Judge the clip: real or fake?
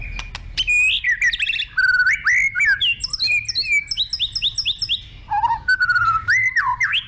real